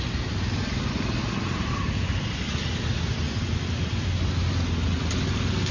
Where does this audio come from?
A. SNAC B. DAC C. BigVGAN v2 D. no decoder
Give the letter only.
D